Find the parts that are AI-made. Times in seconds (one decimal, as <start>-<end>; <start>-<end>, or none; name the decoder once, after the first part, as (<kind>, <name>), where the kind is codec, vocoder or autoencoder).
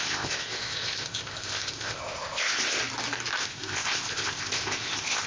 0.0-2.8 (codec, ZipCodec); 3.4-5.3